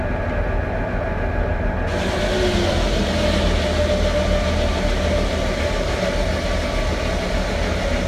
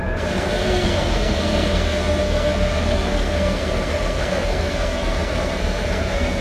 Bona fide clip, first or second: first